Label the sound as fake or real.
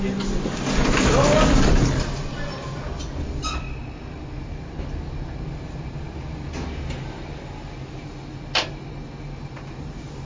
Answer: real